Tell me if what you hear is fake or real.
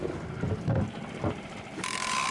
real